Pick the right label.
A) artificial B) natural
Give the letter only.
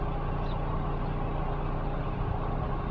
B